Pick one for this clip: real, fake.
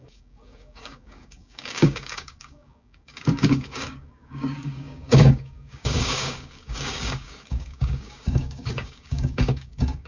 fake